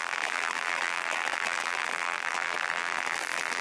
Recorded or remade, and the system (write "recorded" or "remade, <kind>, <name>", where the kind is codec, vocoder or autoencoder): remade, vocoder, BigVGAN v2